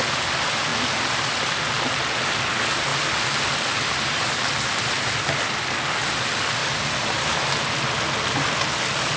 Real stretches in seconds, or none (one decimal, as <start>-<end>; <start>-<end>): 0.0-2.9; 5.1-6.6; 7.2-9.2